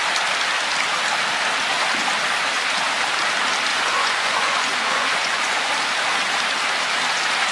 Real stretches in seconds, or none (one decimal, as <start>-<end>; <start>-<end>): 0.0-3.7; 5.7-7.5